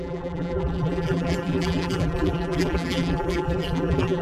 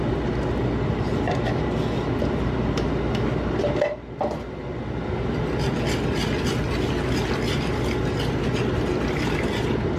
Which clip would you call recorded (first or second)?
second